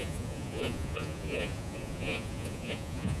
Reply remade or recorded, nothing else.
remade